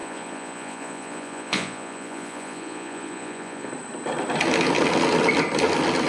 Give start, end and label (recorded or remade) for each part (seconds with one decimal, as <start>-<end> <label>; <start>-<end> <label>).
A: 0.0-3.7 remade; 3.7-6.1 recorded